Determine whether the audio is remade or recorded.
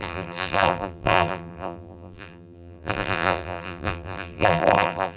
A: remade